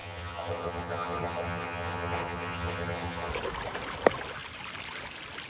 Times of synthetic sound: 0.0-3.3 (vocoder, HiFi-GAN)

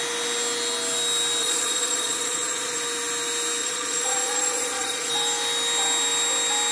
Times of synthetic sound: 1.4-2.8 (vocoder, Vocos); 3.6-5.1

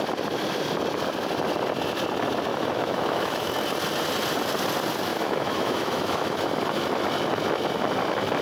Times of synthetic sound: 2.5-3.5 (autoencoder, DAC-VAE); 5.1-6.5

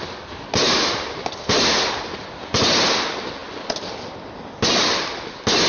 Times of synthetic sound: none

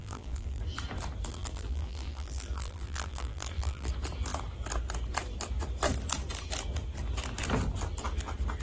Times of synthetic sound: 0.0-0.6 (vocoder, BigVGAN v2); 1.3-3.9

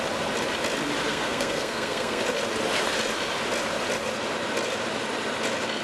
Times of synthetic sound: 1.1-2.2 (codec, SNAC)

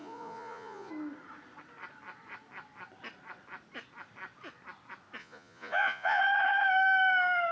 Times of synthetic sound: 0.0-0.9 (vocoder, Vocos); 5.2-6.2

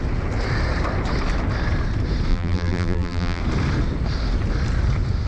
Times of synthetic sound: 2.3-3.4 (vocoder, BigVGAN v2)